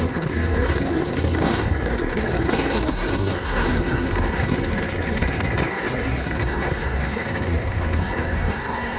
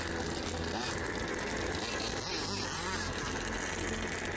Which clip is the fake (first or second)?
first